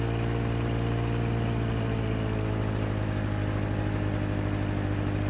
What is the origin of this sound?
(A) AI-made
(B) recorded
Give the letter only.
B